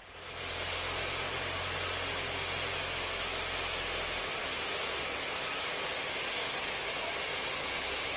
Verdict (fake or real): real